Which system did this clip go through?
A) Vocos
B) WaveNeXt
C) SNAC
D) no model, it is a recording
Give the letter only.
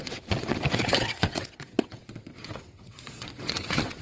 B